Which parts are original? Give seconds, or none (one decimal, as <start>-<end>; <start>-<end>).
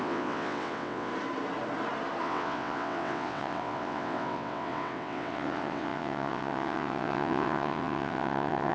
1.1-2.2